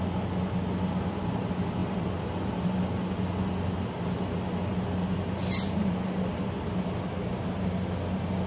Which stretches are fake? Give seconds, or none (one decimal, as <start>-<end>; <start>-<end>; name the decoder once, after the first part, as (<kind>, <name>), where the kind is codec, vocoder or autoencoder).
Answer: none